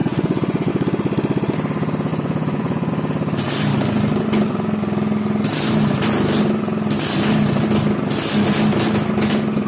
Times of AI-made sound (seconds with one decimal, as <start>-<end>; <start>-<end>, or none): 0.0-0.7; 2.1-2.9